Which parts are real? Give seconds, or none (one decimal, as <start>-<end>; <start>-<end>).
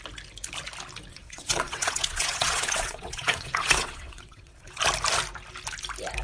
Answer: 0.0-1.1; 4.8-6.2